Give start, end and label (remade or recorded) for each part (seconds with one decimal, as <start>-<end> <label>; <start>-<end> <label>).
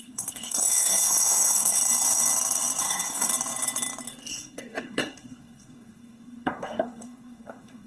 0.0-1.8 remade; 1.8-2.8 recorded; 2.8-3.3 remade; 3.3-4.3 recorded; 4.3-7.9 remade